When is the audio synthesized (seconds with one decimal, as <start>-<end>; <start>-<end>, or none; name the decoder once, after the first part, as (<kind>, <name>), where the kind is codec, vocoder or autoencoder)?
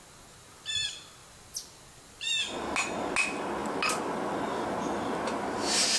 none